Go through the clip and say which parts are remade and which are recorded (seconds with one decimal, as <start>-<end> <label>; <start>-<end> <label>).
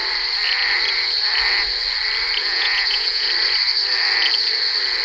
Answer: 0.0-2.4 recorded; 2.4-3.3 remade; 3.3-5.0 recorded